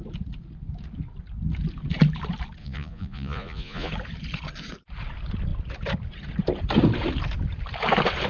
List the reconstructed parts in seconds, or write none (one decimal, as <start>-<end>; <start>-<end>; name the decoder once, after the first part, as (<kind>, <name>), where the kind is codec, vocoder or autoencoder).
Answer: 2.6-3.9 (vocoder, Vocos)